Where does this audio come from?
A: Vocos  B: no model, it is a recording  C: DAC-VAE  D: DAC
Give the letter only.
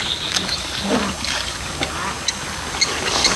D